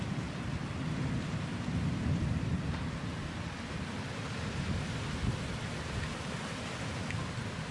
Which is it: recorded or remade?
recorded